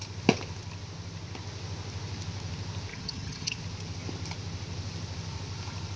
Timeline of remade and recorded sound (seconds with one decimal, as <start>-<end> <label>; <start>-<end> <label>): 0.0-2.9 recorded; 2.9-3.6 remade; 3.6-6.0 recorded